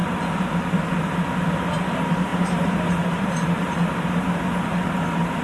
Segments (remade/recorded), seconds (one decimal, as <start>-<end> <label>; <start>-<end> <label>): 0.0-2.3 recorded; 2.3-4.3 remade; 4.3-5.4 recorded